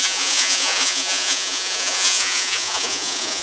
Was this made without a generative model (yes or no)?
no